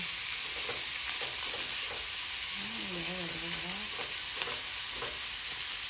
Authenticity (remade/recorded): recorded